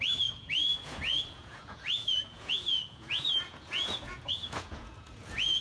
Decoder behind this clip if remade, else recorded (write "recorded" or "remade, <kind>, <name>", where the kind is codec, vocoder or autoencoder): remade, vocoder, Vocos